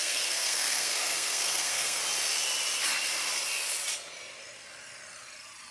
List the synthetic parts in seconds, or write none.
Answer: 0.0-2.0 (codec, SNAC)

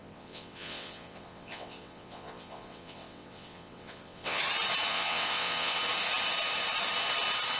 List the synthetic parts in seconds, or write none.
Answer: 0.0-4.4 (vocoder, WaveNeXt); 4.9-5.8

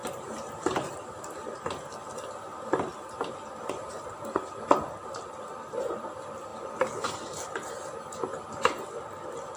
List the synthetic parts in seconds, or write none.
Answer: 0.0-0.9 (vocoder, BigVGAN v2); 6.5-7.7

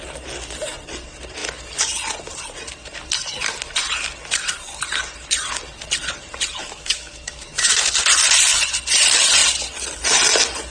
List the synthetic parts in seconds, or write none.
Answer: 6.6-7.8 (autoencoder, DAC-VAE)

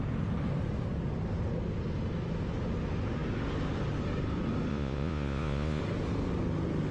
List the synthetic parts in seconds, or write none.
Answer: 4.7-5.8 (vocoder, Vocos)

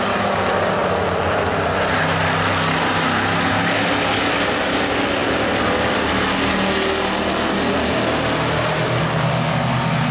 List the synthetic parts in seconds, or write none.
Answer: none

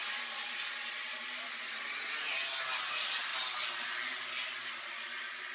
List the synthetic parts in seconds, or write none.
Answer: 0.0-2.5 (vocoder, BigVGAN v2)